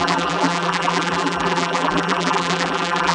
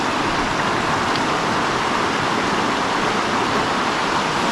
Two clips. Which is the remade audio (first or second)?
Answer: first